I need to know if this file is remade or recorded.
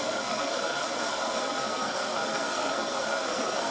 remade